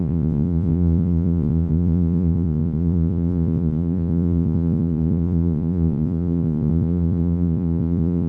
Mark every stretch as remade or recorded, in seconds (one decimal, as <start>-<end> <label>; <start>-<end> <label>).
0.0-8.3 remade